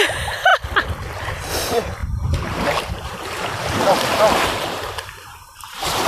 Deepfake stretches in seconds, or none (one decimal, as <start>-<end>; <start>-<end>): 2.0-6.1